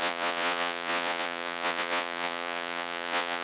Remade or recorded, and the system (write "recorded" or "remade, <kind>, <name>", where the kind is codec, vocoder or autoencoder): remade, vocoder, Vocos